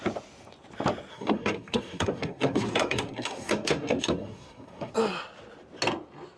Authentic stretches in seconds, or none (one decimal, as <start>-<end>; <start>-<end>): 0.0-1.1; 4.9-6.4